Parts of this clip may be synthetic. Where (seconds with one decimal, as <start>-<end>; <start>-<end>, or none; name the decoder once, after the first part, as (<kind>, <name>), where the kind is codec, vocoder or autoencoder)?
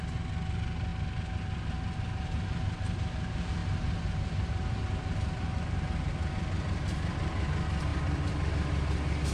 3.6-6.1 (vocoder, BigVGAN v2); 7.9-8.5